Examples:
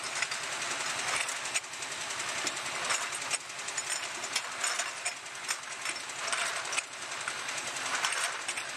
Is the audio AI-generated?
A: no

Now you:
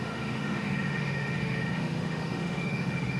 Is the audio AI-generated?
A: yes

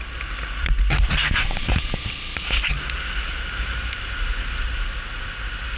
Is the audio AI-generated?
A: no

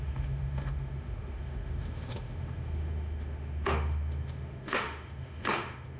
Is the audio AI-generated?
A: yes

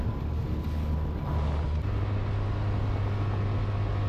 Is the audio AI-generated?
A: no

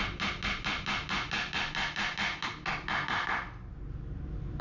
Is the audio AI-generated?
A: no